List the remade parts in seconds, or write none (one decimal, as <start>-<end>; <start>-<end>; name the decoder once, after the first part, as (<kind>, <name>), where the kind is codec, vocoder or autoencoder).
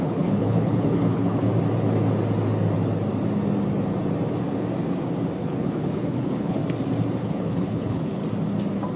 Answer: 0.0-1.5 (codec, HILCodec); 5.4-6.6; 7.2-8.2